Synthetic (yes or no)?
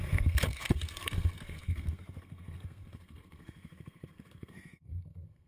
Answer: yes